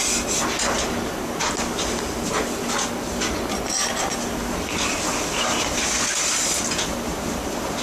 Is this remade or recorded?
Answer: recorded